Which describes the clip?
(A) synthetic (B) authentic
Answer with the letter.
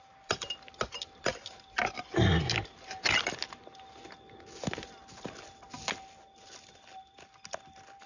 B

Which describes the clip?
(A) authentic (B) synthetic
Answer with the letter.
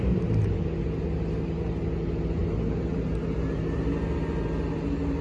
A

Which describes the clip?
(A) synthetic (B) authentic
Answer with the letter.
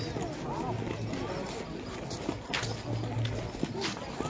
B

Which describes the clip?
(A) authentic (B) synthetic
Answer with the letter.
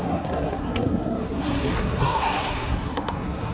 B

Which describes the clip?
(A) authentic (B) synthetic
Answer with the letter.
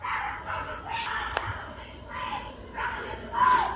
A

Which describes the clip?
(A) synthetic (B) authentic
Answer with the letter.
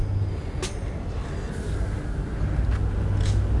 B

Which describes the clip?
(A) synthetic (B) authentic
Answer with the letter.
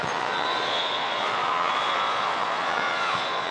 A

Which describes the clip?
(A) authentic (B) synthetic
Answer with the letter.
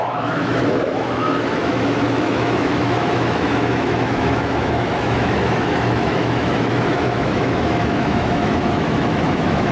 B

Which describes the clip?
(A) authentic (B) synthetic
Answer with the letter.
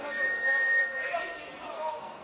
B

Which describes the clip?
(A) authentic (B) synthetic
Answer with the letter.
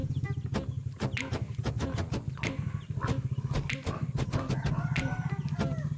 A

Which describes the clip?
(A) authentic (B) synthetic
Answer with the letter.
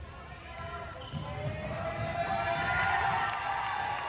A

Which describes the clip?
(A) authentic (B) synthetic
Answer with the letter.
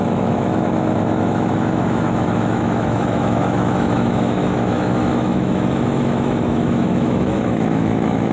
B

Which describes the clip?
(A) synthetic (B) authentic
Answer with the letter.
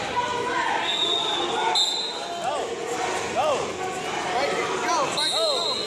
B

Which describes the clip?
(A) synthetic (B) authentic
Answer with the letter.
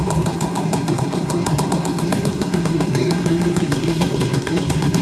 A